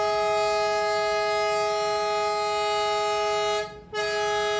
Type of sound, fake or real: real